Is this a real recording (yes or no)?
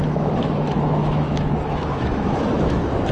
no